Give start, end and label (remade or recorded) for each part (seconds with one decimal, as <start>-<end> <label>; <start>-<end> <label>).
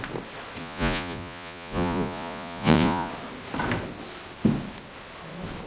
0.0-0.6 recorded; 0.6-3.1 remade; 3.1-5.7 recorded